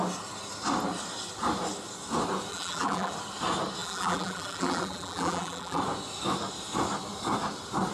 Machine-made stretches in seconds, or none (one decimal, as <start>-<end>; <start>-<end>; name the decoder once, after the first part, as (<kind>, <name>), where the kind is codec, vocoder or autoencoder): 2.5-3.1 (vocoder, BigVGAN v2); 3.8-5.8